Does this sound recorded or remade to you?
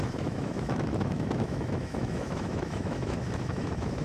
remade